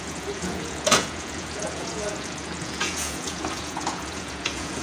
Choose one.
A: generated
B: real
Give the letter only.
A